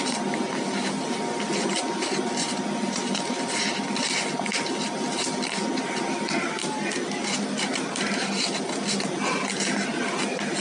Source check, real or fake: real